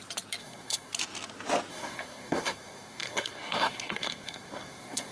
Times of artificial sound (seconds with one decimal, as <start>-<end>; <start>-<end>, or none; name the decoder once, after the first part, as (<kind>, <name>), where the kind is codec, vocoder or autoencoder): 0.4-0.9 (codec, SNAC); 1.7-5.1